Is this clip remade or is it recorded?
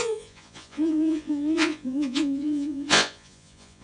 remade